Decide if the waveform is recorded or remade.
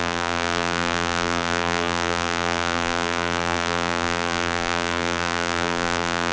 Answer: remade